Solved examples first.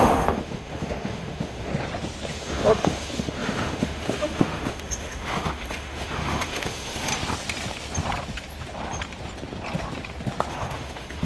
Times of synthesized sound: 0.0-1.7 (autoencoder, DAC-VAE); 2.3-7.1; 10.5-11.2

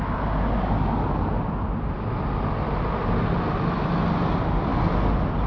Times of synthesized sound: none

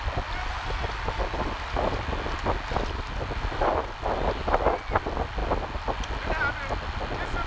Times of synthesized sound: none

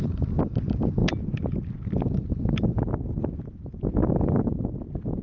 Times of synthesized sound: none

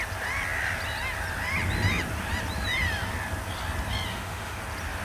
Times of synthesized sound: 4.1-4.6 (autoencoder, DAC-VAE)

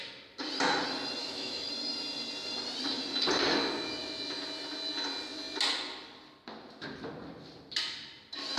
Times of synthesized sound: 1.2-1.7 (autoencoder, DAC-VAE)

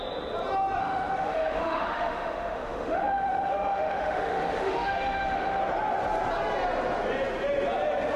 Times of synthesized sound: 0.8-5.6 (autoencoder, DAC-VAE)